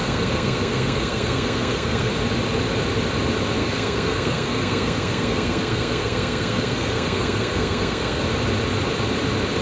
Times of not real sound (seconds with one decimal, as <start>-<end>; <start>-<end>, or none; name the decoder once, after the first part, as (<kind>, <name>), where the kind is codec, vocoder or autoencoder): 0.0-2.1 (codec, SNAC); 3.6-8.2